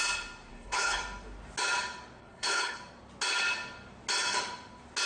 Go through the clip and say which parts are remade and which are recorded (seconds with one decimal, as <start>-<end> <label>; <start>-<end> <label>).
0.0-0.5 recorded; 0.5-1.0 remade; 1.0-2.2 recorded; 2.2-2.8 remade; 2.8-5.1 recorded